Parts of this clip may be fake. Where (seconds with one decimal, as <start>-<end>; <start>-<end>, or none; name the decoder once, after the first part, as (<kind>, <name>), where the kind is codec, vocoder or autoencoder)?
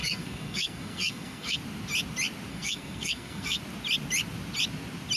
0.0-1.6 (codec, SNAC); 2.5-3.6